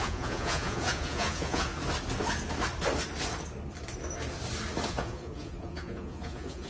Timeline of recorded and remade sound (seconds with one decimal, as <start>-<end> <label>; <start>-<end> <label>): 0.0-1.7 remade; 1.7-4.9 recorded; 4.9-6.7 remade